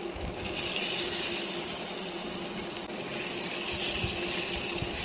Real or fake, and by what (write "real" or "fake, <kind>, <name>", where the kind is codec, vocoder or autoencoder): real